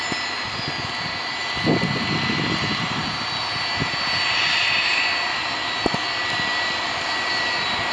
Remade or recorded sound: recorded